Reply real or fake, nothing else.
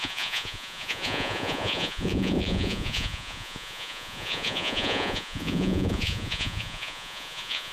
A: fake